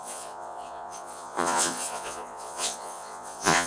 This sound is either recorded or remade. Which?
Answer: remade